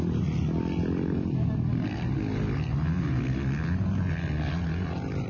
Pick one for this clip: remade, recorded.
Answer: recorded